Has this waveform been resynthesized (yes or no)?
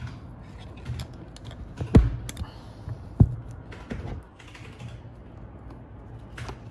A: no